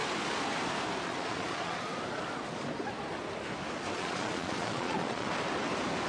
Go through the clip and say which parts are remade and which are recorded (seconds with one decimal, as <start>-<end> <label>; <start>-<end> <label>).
0.0-1.0 recorded; 1.0-1.9 remade; 1.9-3.9 recorded; 3.9-5.3 remade; 5.3-6.1 recorded